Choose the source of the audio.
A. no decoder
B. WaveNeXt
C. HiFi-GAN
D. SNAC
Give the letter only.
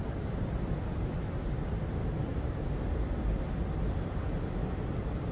A